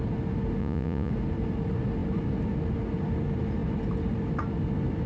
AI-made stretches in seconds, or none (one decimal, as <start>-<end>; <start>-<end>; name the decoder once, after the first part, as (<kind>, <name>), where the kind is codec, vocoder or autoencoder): 0.6-1.1 (vocoder, Vocos)